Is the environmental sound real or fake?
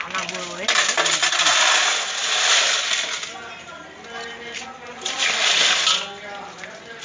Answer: real